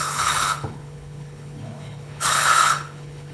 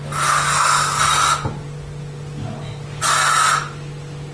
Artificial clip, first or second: first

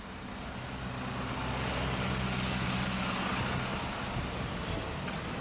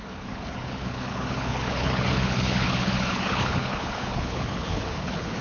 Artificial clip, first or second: second